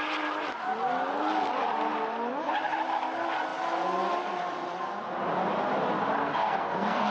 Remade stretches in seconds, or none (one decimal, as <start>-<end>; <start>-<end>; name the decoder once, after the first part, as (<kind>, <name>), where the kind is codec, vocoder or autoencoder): 6.2-7.1 (codec, SNAC)